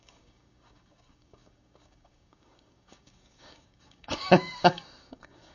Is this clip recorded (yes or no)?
no